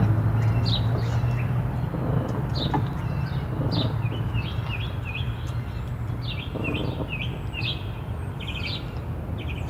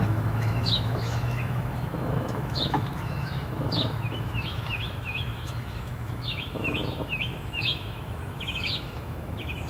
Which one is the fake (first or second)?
second